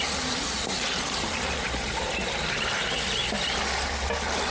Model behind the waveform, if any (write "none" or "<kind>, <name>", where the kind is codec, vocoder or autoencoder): none